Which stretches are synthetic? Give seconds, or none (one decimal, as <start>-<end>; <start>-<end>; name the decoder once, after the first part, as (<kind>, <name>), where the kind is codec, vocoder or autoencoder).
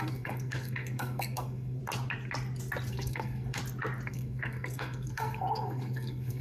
0.0-1.8 (codec, SNAC); 2.9-3.6; 4.1-6.4